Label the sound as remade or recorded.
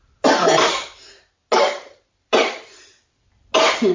recorded